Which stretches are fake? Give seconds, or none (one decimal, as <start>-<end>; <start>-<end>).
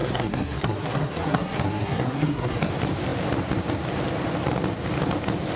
0.0-2.7